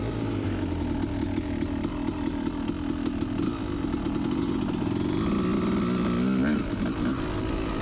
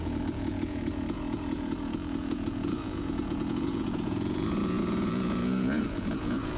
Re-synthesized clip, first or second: second